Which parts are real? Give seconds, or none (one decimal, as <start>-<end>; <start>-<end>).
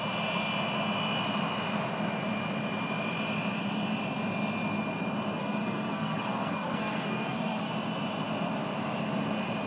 0.0-5.3; 7.7-9.7